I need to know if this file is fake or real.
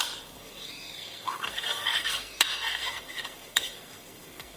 fake